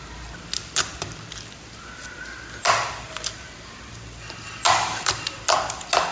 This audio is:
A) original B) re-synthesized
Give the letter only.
A